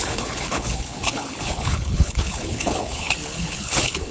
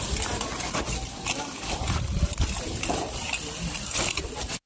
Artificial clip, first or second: first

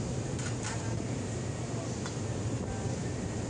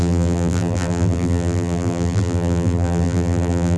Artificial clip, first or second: second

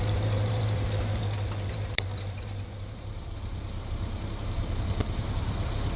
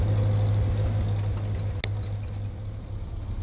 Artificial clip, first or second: first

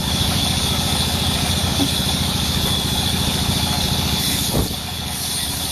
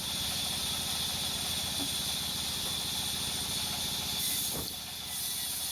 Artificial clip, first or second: first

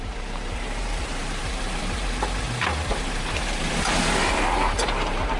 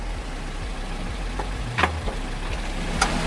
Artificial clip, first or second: first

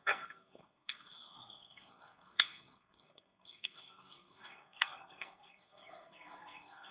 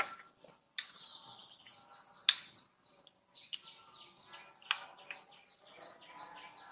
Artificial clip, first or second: first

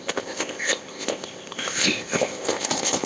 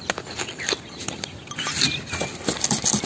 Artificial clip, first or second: first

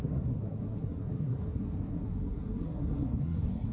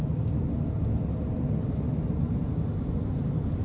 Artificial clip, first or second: first